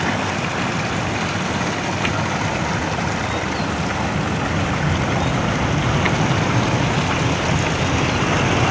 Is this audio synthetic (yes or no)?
no